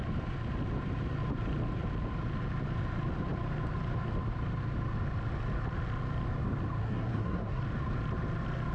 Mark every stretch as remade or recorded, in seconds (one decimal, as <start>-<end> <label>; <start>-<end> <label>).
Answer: 0.0-6.8 recorded; 6.8-7.6 remade; 7.6-8.7 recorded